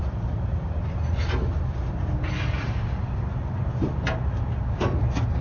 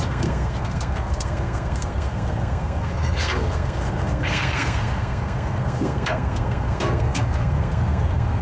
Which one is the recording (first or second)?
first